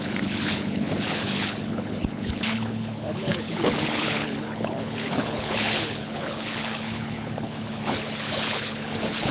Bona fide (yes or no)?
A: no